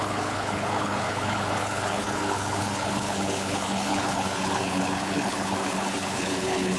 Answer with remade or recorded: remade